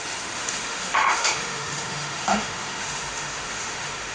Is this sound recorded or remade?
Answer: remade